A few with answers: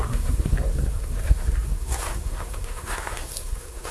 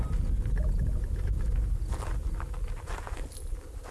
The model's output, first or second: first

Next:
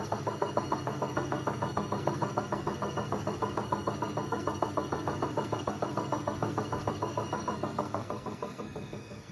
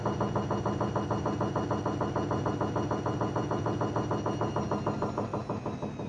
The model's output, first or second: first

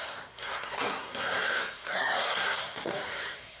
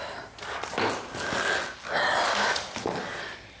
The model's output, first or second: first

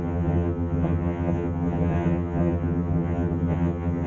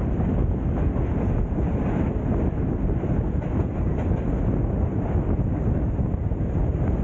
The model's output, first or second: first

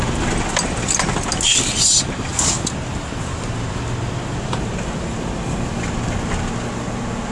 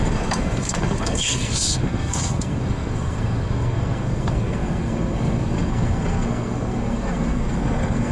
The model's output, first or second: second